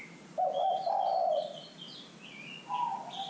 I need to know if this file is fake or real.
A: real